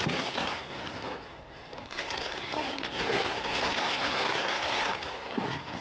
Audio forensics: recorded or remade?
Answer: remade